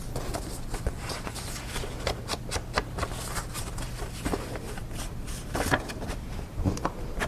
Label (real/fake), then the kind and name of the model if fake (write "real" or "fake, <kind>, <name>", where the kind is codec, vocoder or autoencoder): real